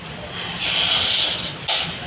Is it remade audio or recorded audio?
recorded